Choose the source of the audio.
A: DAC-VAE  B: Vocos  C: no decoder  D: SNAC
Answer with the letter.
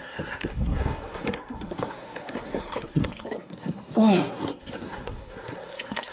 D